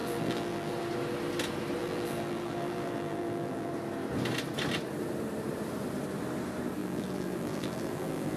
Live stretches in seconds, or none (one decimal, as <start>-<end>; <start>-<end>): 0.7-1.8; 3.7-6.8